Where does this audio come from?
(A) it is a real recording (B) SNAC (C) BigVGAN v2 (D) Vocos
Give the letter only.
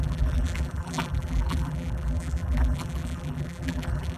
C